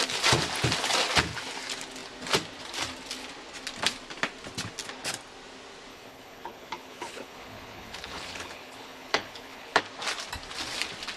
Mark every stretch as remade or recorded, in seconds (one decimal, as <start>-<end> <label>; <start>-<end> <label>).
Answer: 0.0-5.9 recorded; 5.9-9.8 remade; 9.8-11.2 recorded